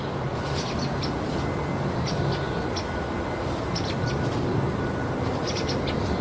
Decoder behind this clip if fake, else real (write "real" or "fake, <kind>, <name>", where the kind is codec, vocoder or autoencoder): real